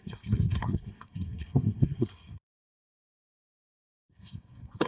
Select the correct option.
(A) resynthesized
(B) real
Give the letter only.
A